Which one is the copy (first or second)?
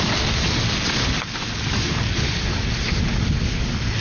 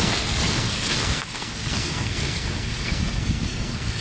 second